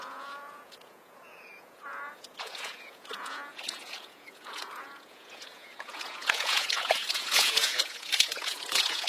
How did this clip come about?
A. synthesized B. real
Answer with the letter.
A